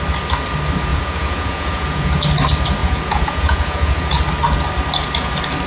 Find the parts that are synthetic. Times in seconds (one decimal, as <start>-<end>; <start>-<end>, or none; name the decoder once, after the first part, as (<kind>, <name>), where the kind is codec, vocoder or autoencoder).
0.9-2.1 (vocoder, Vocos); 2.8-4.2